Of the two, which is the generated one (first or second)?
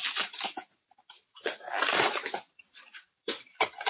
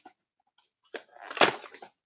first